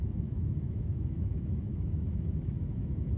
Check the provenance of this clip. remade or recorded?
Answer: remade